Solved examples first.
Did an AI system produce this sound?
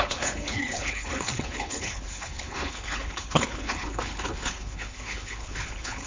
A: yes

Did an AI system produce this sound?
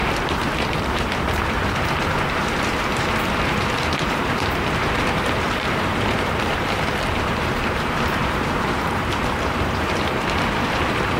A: yes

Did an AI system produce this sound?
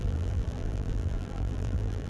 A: yes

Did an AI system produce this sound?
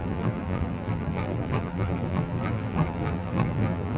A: yes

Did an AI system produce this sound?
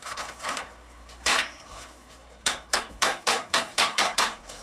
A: yes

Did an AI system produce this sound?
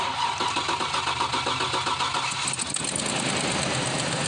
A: no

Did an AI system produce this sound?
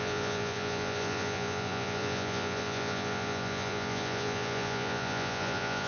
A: yes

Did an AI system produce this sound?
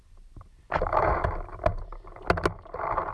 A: no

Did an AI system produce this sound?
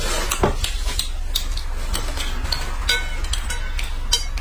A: no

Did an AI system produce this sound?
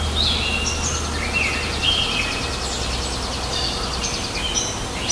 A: no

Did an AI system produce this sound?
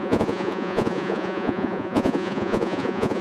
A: yes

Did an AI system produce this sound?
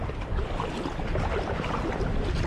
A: no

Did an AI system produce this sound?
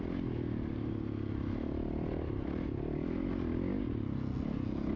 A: no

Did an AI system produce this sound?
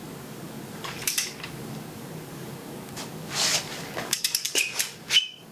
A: yes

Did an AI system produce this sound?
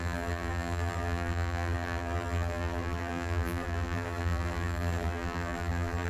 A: yes